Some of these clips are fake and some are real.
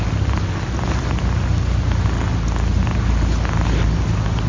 real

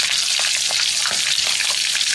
real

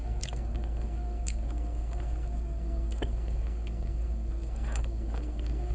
fake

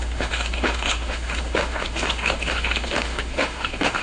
fake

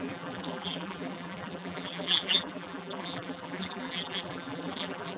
fake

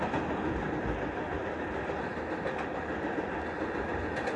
real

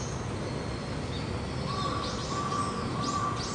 real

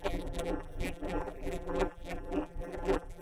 fake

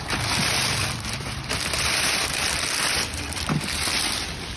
fake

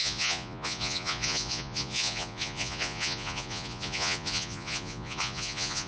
fake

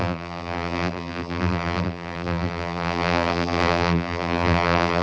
fake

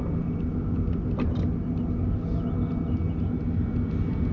real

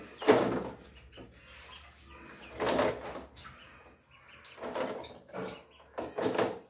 real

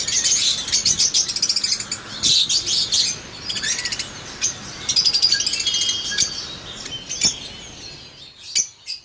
real